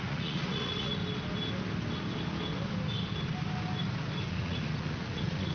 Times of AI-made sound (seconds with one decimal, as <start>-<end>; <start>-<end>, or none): 0.0-1.0; 4.3-5.5